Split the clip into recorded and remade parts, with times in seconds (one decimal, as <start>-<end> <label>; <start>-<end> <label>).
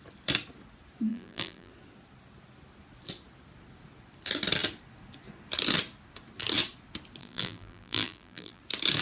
0.0-1.1 recorded; 1.1-1.7 remade; 1.7-7.2 recorded; 7.2-8.6 remade; 8.6-9.0 recorded